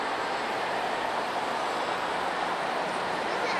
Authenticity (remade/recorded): recorded